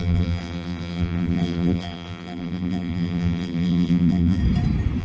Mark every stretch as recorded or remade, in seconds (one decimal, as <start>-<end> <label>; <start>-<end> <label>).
0.0-4.4 remade; 4.4-5.0 recorded